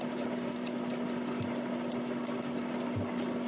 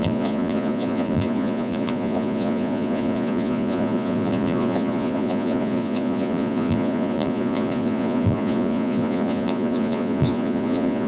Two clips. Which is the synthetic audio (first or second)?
second